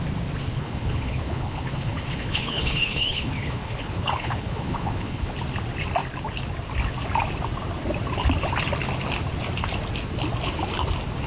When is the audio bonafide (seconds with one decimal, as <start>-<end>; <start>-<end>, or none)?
0.0-0.5; 5.3-11.3